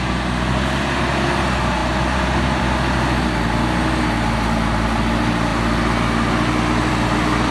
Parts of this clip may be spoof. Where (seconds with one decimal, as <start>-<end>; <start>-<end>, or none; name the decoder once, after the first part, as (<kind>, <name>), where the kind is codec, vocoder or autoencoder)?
1.8-2.6 (vocoder, BigVGAN v2)